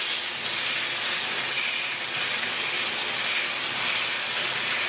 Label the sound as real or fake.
real